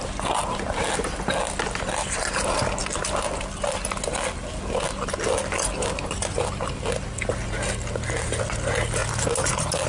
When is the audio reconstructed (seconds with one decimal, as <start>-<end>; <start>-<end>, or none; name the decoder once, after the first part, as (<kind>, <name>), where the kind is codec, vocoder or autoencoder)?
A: none